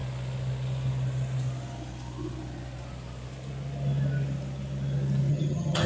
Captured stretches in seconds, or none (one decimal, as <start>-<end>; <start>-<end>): 0.0-5.3